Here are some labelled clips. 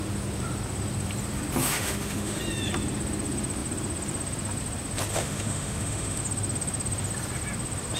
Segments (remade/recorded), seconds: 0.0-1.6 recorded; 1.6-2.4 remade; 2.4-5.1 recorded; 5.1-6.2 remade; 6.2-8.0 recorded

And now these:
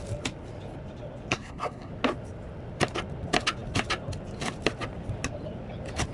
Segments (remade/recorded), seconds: 0.0-1.3 recorded; 1.3-1.9 remade; 1.9-6.1 recorded

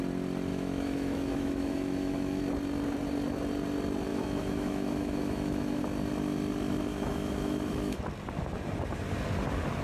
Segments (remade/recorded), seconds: 0.0-0.5 recorded; 0.5-2.4 remade; 2.4-4.1 recorded; 4.1-5.8 remade; 5.8-6.9 recorded; 6.9-8.0 remade; 8.0-9.8 recorded

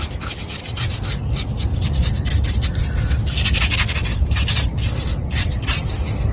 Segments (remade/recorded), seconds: 0.0-4.1 recorded; 4.1-5.6 remade; 5.6-6.3 recorded

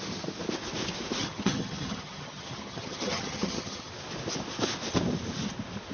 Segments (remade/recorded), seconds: 0.0-1.2 recorded; 1.2-3.9 remade; 3.9-5.9 recorded

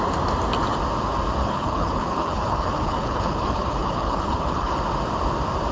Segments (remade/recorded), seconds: 0.0-1.4 recorded; 1.4-4.8 remade; 4.8-5.7 recorded

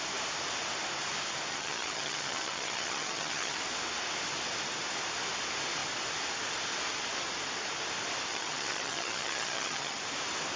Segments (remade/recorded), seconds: 0.0-1.5 recorded; 1.5-3.6 remade; 3.6-8.3 recorded; 8.3-10.0 remade; 10.0-10.6 recorded

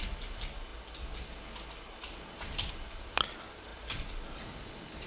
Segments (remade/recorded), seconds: 0.0-5.1 recorded